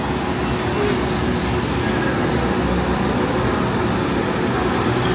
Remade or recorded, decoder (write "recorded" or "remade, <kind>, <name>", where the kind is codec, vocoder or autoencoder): recorded